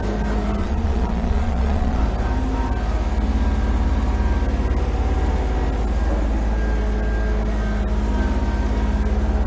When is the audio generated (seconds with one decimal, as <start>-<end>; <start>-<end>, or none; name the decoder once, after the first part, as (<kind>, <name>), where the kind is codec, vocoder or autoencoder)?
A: 0.6-2.0 (vocoder, Vocos)

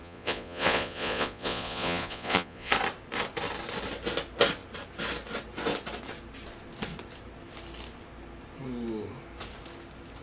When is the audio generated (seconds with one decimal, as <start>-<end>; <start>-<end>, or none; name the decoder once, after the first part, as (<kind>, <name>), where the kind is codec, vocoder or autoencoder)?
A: 0.0-2.7 (vocoder, Vocos)

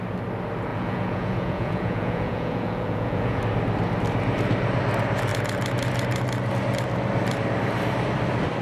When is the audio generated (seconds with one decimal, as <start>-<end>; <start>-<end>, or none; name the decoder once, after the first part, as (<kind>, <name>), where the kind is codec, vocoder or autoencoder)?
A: 0.7-3.4 (vocoder, Vocos)

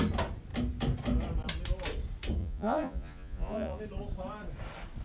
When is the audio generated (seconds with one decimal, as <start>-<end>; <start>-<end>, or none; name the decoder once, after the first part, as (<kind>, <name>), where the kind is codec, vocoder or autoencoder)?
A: 2.4-3.8 (vocoder, Vocos)